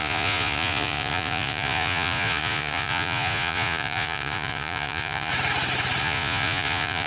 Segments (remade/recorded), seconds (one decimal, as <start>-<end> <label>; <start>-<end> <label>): 0.0-5.3 remade; 5.3-6.0 recorded; 6.0-7.1 remade